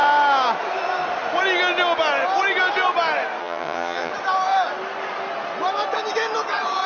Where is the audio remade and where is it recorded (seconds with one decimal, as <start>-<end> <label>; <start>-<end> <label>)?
0.0-3.4 recorded; 3.4-4.1 remade; 4.1-6.9 recorded